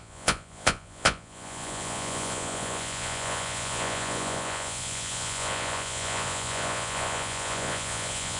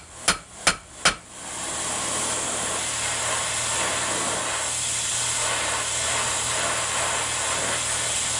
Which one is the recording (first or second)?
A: second